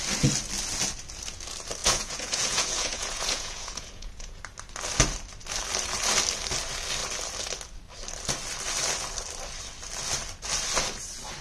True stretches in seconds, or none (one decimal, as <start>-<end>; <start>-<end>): 0.0-1.8; 4.4-11.4